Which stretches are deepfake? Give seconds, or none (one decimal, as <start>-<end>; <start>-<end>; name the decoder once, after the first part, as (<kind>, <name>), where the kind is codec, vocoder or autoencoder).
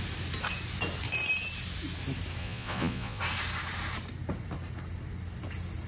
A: 2.4-3.2 (vocoder, Vocos)